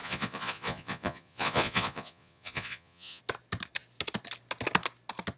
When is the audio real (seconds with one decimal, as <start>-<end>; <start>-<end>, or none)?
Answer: 3.2-5.4